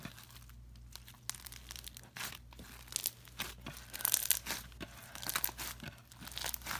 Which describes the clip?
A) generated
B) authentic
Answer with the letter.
B